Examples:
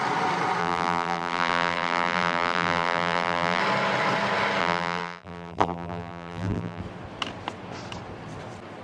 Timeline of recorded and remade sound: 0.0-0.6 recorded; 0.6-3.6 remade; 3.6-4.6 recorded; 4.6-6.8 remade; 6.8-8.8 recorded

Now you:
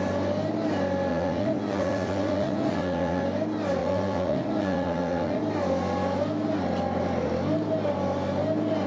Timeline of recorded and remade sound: 0.0-1.1 recorded; 1.1-3.2 remade; 3.2-3.8 recorded; 3.8-5.4 remade; 5.4-8.9 recorded

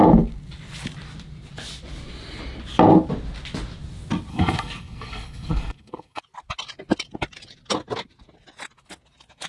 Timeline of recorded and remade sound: 0.0-4.3 recorded; 4.3-6.2 remade; 6.2-9.5 recorded

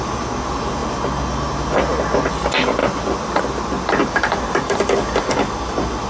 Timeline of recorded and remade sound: 0.0-4.0 recorded; 4.0-6.1 remade

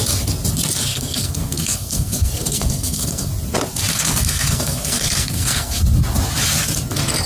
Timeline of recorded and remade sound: 0.0-0.9 recorded; 0.9-3.3 remade; 3.3-3.9 recorded; 3.9-5.8 remade; 5.8-7.3 recorded

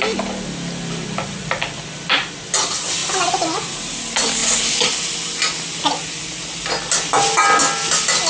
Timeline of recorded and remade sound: 0.0-8.3 recorded

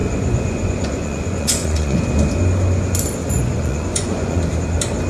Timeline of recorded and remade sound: 0.0-2.0 remade; 2.0-3.2 recorded; 3.2-4.4 remade; 4.4-5.1 recorded